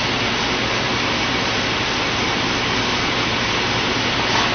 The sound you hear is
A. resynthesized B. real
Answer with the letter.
B